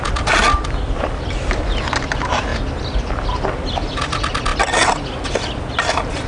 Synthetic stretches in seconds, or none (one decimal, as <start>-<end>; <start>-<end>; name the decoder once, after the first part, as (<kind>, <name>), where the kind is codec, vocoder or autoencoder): none